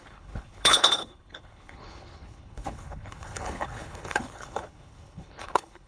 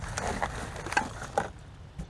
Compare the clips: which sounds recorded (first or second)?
second